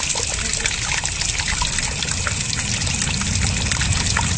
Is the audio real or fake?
real